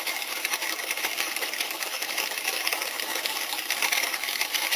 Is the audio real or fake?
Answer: fake